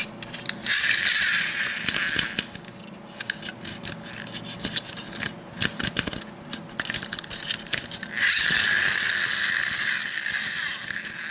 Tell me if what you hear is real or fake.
real